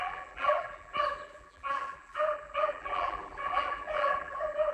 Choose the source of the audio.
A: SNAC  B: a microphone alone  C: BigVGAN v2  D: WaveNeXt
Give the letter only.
C